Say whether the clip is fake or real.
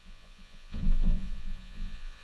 fake